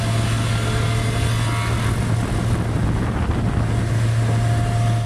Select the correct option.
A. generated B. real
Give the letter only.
B